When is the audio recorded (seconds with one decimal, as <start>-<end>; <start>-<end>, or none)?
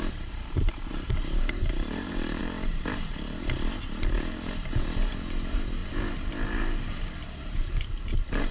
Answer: none